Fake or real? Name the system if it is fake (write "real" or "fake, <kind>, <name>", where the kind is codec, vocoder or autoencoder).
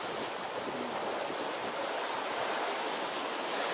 real